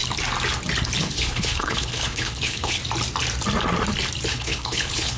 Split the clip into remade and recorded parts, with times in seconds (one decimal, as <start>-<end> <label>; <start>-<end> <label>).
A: 0.0-1.0 recorded; 1.0-2.8 remade; 2.8-4.3 recorded; 4.3-5.2 remade